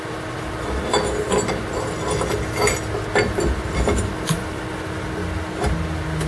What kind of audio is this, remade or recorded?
recorded